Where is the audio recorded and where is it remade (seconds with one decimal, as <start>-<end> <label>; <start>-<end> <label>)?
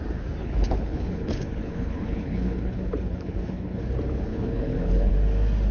0.0-0.4 recorded; 0.4-3.8 remade; 3.8-4.3 recorded; 4.3-5.1 remade; 5.1-5.7 recorded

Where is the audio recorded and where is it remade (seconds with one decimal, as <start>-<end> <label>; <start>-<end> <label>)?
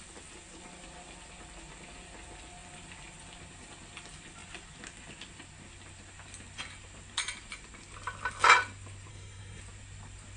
0.0-9.1 recorded; 9.1-9.6 remade; 9.6-10.4 recorded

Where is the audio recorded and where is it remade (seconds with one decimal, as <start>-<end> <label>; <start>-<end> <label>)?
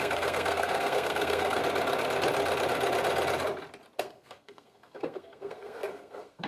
0.0-1.6 remade; 1.6-4.0 recorded; 4.0-6.5 remade